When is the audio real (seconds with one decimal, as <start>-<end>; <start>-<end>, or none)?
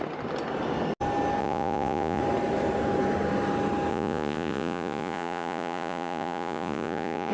0.0-1.4; 2.2-3.9